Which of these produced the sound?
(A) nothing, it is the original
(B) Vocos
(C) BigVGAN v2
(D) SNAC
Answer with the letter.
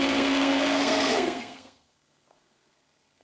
D